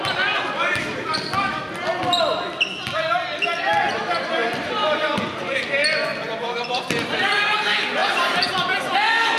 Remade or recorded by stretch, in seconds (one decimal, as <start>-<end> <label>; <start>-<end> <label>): 0.0-4.4 recorded; 4.4-5.6 remade; 5.6-8.0 recorded; 8.0-8.5 remade; 8.5-9.4 recorded